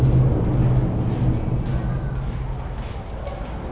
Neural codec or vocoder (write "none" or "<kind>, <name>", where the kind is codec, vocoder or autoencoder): none